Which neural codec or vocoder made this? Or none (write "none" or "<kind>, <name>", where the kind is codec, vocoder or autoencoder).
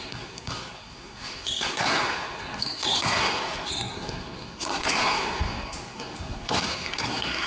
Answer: codec, SNAC